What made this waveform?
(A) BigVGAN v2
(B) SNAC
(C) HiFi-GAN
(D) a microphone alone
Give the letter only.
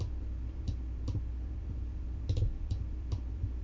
A